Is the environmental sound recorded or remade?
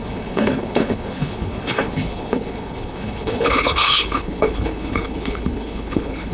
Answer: remade